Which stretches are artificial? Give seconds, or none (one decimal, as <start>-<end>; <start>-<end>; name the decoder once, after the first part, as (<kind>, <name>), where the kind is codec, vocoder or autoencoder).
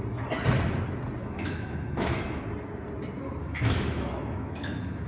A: 1.2-2.4 (autoencoder, DAC-VAE); 3.4-5.1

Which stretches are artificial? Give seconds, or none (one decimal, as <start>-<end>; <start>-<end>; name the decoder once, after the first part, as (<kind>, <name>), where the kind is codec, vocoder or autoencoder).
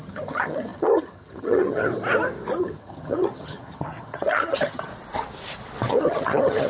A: 0.0-1.9 (vocoder, HiFi-GAN); 2.6-4.9; 5.9-6.7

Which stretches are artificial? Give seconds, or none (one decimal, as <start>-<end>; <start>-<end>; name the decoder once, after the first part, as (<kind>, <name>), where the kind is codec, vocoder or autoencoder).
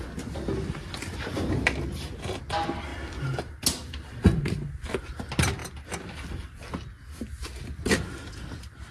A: 2.9-4.7 (vocoder, BigVGAN v2); 5.6-6.7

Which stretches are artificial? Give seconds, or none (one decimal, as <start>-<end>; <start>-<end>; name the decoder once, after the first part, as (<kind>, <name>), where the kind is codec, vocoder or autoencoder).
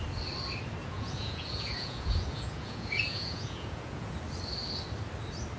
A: 0.8-4.2 (vocoder, Vocos)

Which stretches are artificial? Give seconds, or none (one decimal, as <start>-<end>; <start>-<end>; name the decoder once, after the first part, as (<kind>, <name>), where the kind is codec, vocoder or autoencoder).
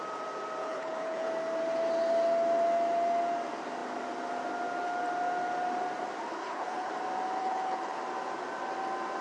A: 0.6-1.3 (codec, HILCodec); 6.4-6.9; 7.4-8.0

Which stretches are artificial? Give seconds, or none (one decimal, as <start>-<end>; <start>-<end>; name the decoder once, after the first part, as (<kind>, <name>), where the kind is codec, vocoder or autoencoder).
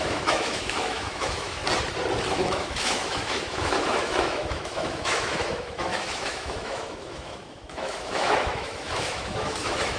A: 0.0-1.6 (autoencoder, DAC-VAE); 2.3-10.0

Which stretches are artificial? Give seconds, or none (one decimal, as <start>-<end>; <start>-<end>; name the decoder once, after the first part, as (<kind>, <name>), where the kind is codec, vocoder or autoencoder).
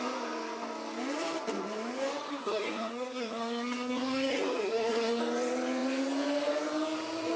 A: 2.3-5.2 (codec, SNAC)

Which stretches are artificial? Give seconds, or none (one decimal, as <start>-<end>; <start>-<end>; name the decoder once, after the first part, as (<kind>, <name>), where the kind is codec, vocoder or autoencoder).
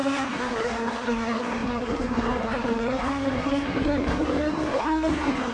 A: 0.0-5.5 (codec, SNAC)